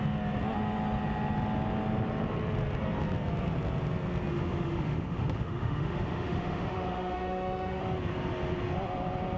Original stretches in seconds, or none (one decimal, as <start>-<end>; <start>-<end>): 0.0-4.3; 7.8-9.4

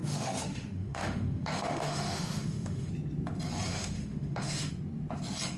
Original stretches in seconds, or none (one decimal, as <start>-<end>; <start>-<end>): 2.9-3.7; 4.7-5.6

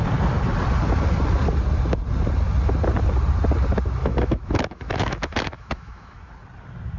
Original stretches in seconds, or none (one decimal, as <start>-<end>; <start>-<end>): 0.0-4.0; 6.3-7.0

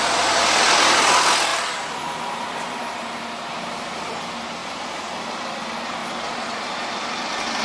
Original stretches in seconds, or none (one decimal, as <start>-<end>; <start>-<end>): 0.0-7.6

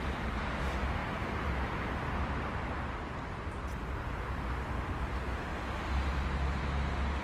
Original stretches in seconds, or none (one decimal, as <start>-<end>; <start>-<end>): 0.0-7.2

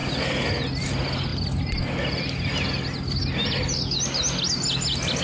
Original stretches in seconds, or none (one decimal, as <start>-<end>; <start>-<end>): 0.0-5.2

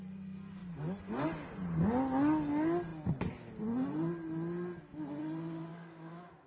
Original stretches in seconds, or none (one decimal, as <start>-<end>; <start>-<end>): 0.0-5.7